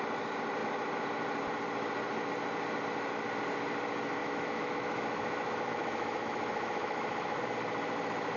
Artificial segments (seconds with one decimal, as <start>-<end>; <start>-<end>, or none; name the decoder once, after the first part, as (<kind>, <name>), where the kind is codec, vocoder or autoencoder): 4.2-7.4 (autoencoder, DAC-VAE)